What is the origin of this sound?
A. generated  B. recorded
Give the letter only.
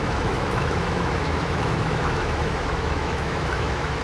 A